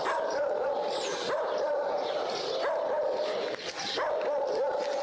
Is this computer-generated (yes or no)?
yes